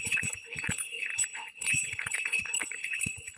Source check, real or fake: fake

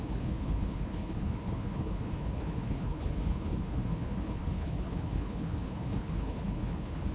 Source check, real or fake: fake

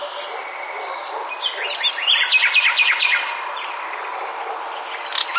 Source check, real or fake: real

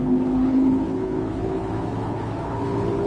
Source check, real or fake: fake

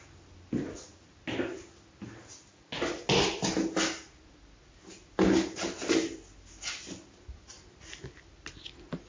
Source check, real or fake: real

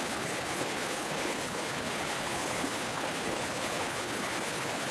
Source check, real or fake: fake